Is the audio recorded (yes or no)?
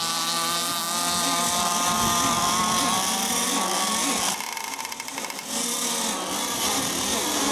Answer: yes